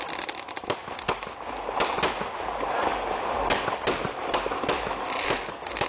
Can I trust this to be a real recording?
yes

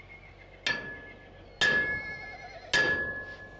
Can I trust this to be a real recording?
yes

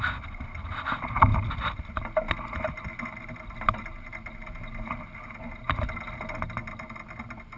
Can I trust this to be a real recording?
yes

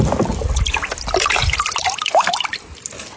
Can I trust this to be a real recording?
yes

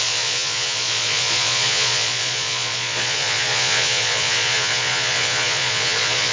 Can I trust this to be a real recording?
no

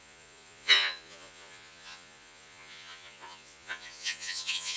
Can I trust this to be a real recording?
no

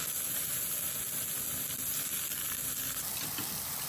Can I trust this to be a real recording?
yes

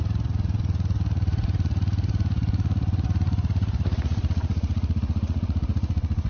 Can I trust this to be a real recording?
no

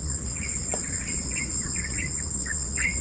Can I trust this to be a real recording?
no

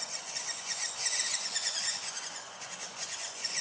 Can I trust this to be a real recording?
no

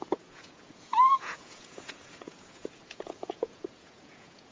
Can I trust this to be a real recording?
no